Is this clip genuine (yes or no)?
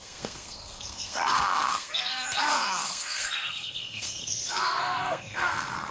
no